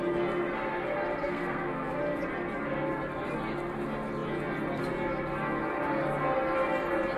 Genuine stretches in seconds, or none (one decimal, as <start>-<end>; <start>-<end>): 0.0-1.2; 2.0-7.2